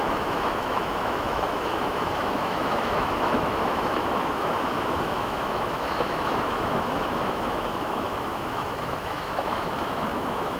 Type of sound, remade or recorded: remade